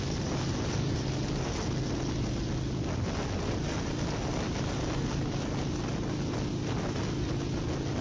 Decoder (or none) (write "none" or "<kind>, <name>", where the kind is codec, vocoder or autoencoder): none